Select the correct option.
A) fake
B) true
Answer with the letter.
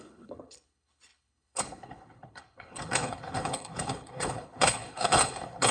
A